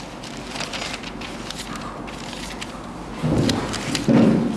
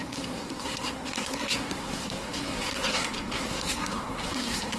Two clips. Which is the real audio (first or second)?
first